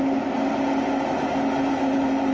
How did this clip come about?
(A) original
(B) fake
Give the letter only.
A